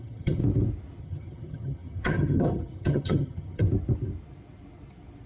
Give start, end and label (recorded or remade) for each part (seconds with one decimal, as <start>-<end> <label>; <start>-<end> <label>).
0.0-0.4 remade; 0.4-1.0 recorded; 1.0-3.6 remade; 3.6-5.3 recorded